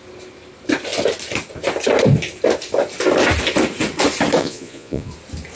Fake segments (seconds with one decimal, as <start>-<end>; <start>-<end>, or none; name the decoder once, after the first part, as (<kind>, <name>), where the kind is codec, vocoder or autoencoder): 4.4-5.1 (vocoder, Vocos)